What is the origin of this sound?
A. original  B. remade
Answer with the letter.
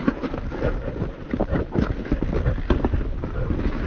A